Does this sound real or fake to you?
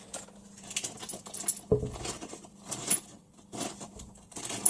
real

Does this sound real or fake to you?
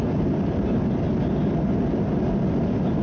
real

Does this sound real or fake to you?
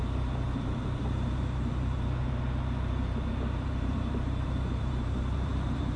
fake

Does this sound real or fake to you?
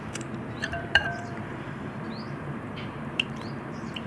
fake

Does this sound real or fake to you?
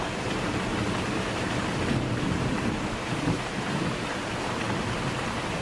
fake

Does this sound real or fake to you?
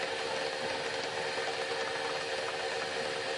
real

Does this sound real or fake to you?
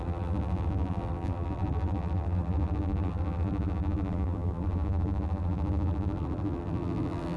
fake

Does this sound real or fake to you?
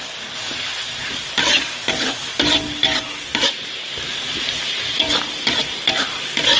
real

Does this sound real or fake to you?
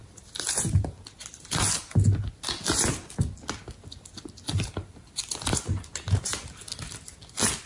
real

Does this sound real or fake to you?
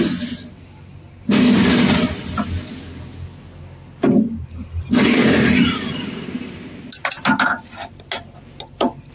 real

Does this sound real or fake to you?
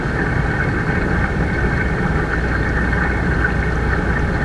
real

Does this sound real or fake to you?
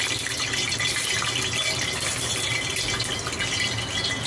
real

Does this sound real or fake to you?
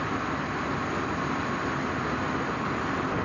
real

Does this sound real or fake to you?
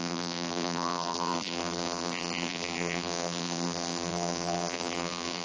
fake